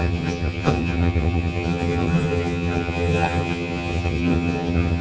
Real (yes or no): no